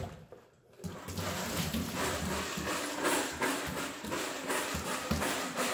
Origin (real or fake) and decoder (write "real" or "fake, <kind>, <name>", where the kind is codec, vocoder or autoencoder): real